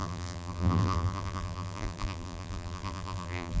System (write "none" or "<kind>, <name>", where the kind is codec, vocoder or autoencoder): vocoder, BigVGAN v2